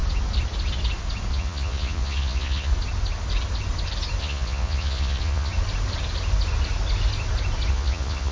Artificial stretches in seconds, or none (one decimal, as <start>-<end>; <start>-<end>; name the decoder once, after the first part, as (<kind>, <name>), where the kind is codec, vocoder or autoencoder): 1.3-2.7 (vocoder, Vocos); 4.2-5.5; 7.7-8.3